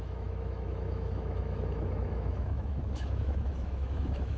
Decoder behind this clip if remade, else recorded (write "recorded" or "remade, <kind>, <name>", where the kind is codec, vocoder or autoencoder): remade, autoencoder, DAC-VAE